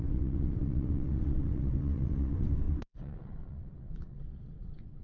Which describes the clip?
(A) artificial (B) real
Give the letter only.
A